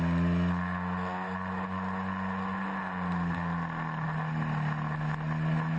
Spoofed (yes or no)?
no